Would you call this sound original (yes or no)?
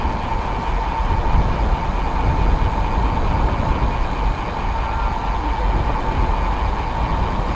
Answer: yes